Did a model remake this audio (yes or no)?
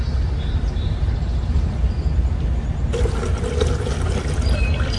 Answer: no